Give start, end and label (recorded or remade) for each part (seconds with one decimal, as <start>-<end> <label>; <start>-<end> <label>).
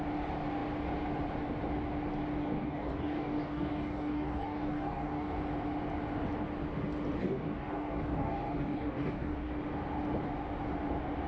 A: 0.0-2.4 recorded; 2.4-5.4 remade; 5.4-7.2 recorded; 7.2-9.5 remade; 9.5-11.3 recorded